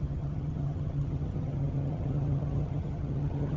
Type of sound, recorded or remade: remade